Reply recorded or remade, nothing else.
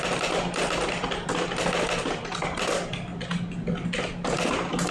recorded